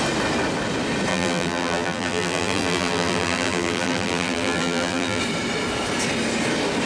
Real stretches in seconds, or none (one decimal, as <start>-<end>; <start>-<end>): 0.0-1.1; 5.2-6.9